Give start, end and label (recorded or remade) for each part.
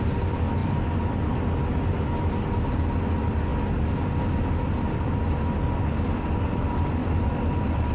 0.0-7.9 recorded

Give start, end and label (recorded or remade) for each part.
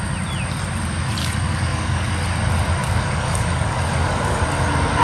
0.0-1.2 recorded; 1.2-2.1 remade; 2.1-2.8 recorded; 2.8-4.4 remade; 4.4-5.0 recorded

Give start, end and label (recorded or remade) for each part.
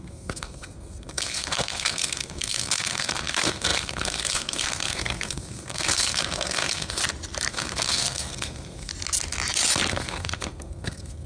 0.0-7.0 remade; 7.0-7.5 recorded; 7.5-8.9 remade; 8.9-9.9 recorded; 9.9-11.3 remade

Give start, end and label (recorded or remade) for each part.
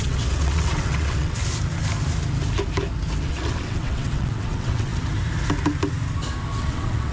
0.0-1.4 remade; 1.4-3.2 recorded; 3.2-4.9 remade; 4.9-6.6 recorded; 6.6-7.1 remade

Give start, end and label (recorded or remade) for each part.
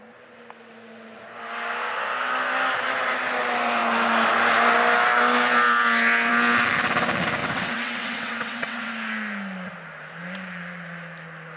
0.0-7.4 recorded; 7.4-8.9 remade; 8.9-11.6 recorded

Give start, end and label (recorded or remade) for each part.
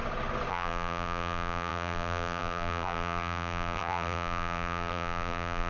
0.0-0.5 recorded; 0.5-5.7 remade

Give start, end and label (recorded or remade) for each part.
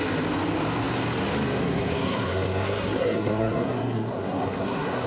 0.0-1.6 recorded; 1.6-5.1 remade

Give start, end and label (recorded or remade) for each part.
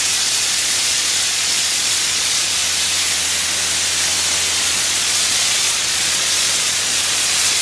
0.0-2.6 remade; 2.6-4.6 recorded; 4.6-7.6 remade